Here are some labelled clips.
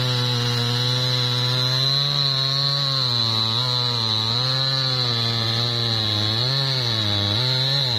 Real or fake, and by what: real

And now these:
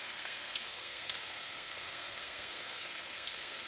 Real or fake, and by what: fake, codec, SNAC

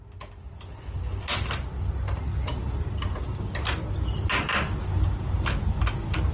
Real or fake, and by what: real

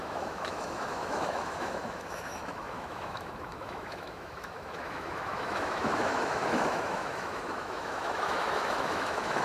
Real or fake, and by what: fake, autoencoder, DAC-VAE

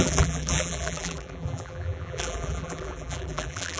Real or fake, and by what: fake, vocoder, BigVGAN v2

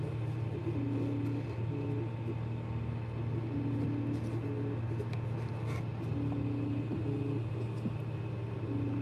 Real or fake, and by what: real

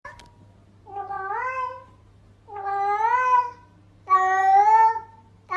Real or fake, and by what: real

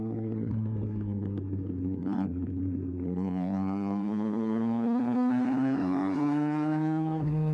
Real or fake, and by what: fake, codec, SNAC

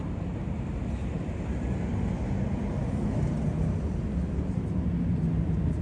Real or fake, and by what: real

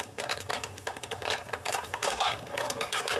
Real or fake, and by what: fake, codec, SNAC